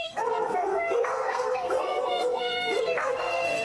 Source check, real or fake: fake